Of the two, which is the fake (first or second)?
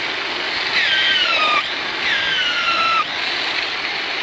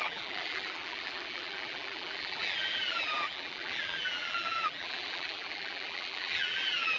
second